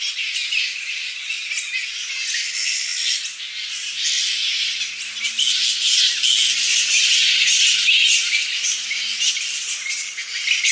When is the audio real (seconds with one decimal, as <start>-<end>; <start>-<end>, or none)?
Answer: 0.0-10.7